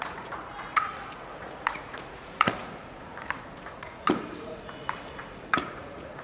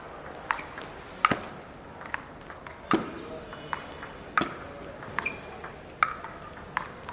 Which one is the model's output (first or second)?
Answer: first